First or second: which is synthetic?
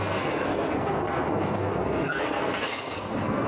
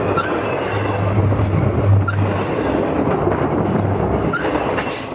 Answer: first